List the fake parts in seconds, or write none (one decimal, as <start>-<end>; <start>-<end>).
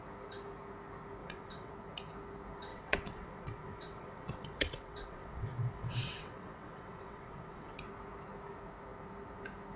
1.2-1.7; 2.7-7.9